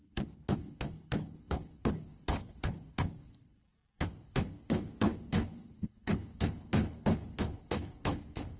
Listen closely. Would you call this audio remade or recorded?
remade